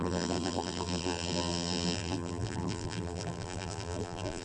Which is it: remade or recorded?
remade